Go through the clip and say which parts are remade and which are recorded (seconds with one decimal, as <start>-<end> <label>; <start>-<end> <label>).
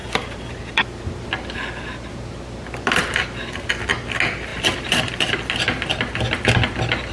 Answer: 0.0-0.6 remade; 0.6-4.5 recorded; 4.5-5.2 remade; 5.2-7.1 recorded